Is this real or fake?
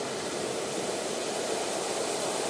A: real